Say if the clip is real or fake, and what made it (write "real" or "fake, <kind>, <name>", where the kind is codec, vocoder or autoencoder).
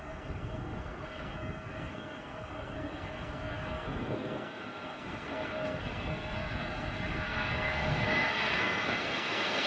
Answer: fake, codec, SNAC